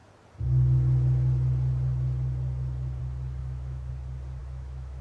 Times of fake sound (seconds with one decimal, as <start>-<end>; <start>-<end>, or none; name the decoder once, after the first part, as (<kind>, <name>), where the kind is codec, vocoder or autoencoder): 3.4-3.9 (autoencoder, DAC-VAE); 4.4-5.0